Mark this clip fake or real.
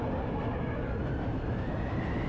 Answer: real